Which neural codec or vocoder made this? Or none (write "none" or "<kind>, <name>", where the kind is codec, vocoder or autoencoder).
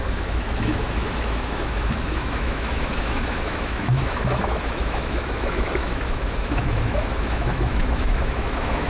autoencoder, DAC-VAE